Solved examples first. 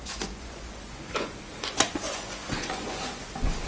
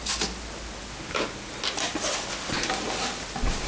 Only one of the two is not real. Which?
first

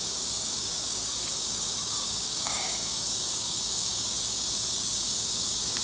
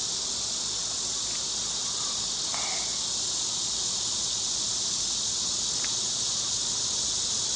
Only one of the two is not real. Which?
first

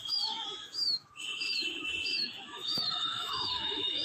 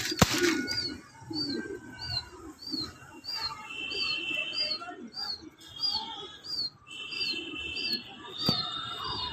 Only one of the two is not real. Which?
first